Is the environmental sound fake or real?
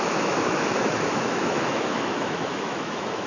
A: fake